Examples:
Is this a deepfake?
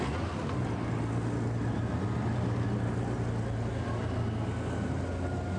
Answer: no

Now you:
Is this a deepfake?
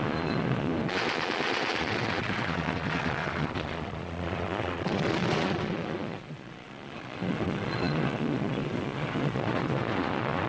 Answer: yes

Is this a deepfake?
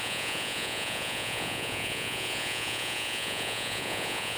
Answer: yes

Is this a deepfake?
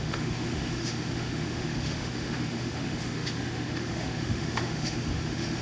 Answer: yes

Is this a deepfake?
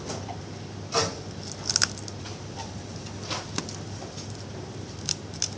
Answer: no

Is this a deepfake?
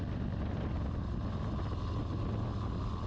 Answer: no